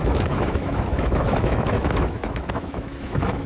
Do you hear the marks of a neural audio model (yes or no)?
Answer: yes